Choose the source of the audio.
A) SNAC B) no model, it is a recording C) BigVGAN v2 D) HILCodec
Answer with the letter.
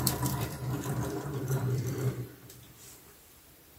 C